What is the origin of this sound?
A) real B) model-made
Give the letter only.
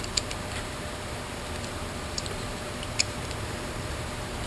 B